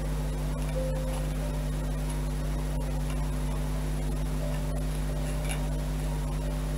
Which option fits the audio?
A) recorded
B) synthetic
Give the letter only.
A